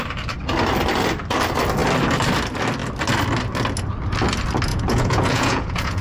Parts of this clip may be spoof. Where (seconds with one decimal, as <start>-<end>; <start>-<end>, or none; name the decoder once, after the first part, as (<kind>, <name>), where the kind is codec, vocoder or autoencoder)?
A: 4.7-6.0 (vocoder, Vocos)